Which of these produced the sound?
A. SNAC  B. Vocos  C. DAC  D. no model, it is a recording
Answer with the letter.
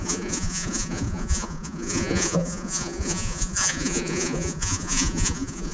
B